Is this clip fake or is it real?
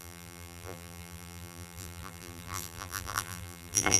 fake